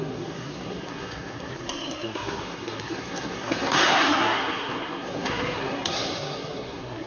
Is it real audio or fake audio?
fake